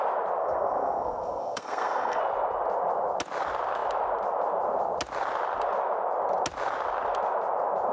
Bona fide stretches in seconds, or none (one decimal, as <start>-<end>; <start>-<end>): 0.0-0.4; 2.2-7.9